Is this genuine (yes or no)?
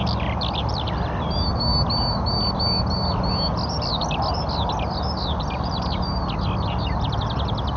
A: yes